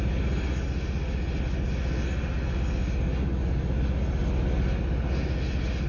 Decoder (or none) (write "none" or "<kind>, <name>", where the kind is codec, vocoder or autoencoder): none